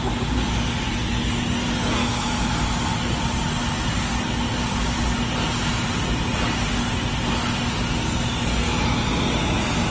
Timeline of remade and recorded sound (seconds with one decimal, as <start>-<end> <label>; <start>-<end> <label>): 0.0-2.0 recorded; 2.0-2.5 remade; 2.5-9.9 recorded